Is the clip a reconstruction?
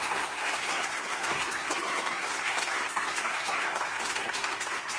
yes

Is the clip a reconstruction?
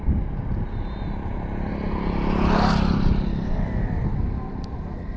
no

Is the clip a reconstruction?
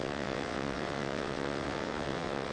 yes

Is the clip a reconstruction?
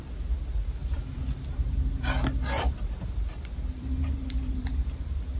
yes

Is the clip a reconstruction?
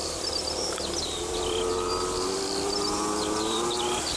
no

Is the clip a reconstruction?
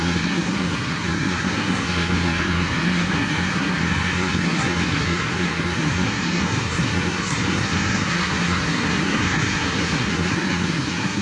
yes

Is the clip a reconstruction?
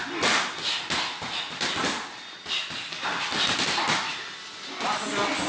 no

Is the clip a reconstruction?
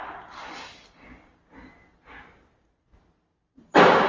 no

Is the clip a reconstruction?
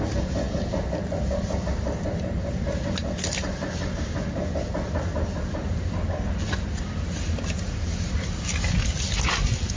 no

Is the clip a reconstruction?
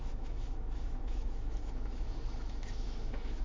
yes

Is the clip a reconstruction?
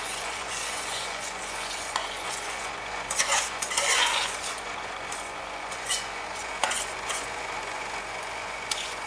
yes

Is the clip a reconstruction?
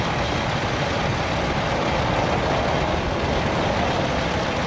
no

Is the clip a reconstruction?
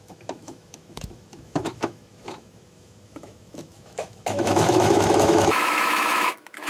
yes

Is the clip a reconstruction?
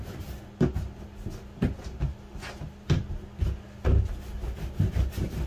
no